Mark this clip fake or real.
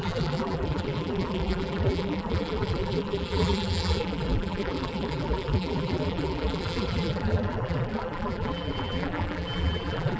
fake